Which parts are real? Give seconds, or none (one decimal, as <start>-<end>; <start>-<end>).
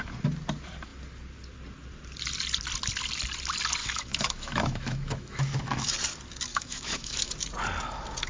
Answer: 0.0-3.8; 5.9-6.5; 7.3-8.3